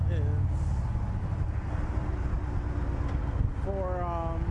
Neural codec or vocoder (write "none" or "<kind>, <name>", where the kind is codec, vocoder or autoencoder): none